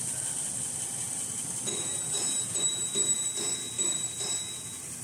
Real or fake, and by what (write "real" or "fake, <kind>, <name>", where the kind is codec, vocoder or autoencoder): real